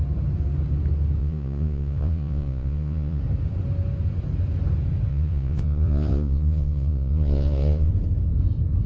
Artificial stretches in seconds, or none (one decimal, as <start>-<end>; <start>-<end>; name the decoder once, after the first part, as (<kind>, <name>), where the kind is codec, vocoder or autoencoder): 1.2-3.2 (vocoder, Vocos); 5.1-7.9